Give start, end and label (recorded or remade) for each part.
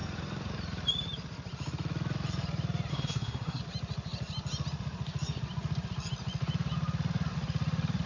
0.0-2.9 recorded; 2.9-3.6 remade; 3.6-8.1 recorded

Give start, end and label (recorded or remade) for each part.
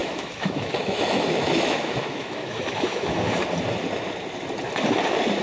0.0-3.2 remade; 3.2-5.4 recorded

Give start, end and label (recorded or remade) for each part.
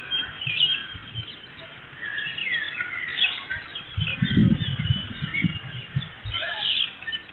0.0-2.4 recorded; 2.4-6.8 remade; 6.8-7.3 recorded